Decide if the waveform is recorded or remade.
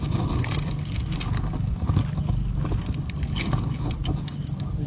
recorded